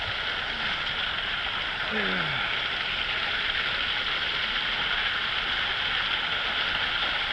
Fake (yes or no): no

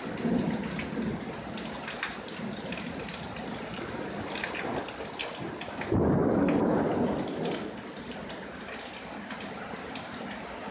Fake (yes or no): no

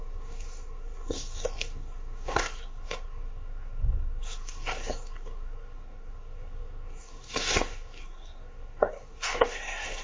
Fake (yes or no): yes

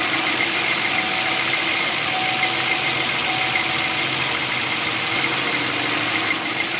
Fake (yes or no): no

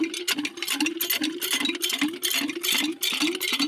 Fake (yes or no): no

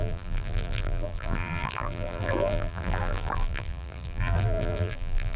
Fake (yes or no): yes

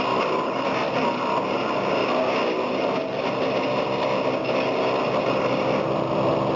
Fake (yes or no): no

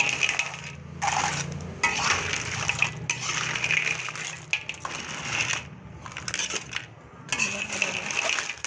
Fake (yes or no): no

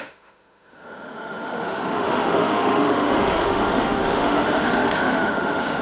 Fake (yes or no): yes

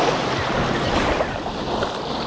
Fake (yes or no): no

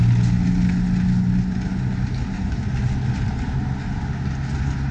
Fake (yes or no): no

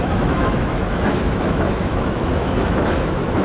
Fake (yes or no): yes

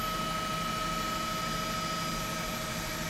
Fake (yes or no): no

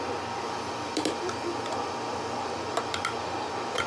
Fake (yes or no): no